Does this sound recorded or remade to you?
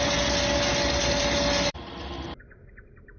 recorded